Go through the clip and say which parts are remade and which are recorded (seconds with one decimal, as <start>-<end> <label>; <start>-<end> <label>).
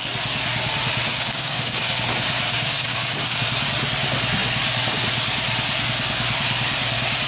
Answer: 0.0-1.1 recorded; 1.1-1.9 remade; 1.9-2.5 recorded; 2.5-3.4 remade; 3.4-7.3 recorded